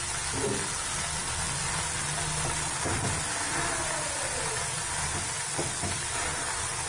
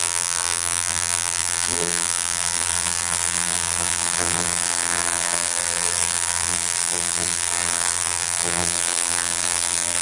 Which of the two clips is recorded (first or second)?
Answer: first